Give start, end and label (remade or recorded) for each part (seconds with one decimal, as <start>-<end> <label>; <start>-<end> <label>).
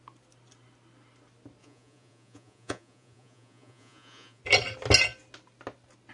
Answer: 0.0-1.6 recorded; 1.6-4.4 remade; 4.4-6.1 recorded